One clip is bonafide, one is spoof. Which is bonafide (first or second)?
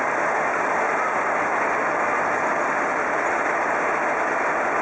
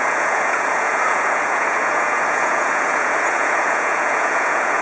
first